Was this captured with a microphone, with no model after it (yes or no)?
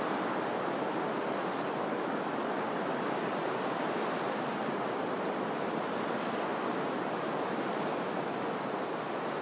yes